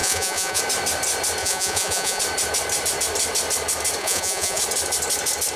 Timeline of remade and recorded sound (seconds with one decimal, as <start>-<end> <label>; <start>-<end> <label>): 0.0-0.6 remade; 0.6-1.4 recorded; 1.4-2.2 remade; 2.2-4.0 recorded; 4.0-4.6 remade; 4.6-5.6 recorded